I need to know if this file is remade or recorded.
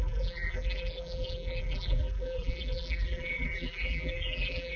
remade